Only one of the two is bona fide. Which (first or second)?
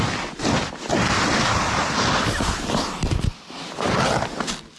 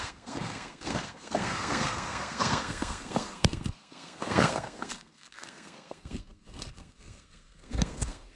first